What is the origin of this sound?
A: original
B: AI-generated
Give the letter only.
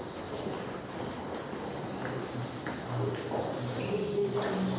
A